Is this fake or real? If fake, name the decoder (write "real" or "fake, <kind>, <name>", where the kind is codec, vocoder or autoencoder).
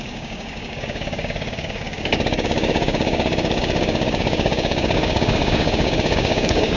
fake, codec, DAC